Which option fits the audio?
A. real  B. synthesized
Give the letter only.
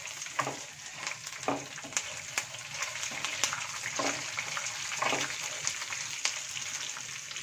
A